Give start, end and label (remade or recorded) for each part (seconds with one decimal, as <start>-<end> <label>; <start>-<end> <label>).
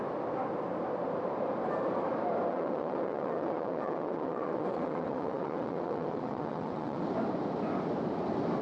0.0-2.5 recorded; 2.5-7.0 remade; 7.0-8.6 recorded